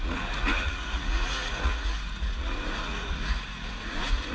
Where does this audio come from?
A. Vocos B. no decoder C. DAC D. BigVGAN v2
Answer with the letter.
A